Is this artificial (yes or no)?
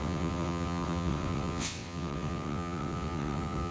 yes